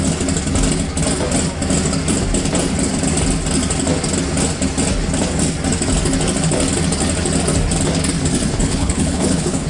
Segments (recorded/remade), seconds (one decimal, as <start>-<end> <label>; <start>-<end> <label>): 0.0-8.6 recorded; 8.6-9.7 remade